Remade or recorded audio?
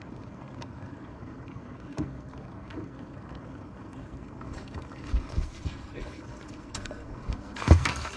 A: remade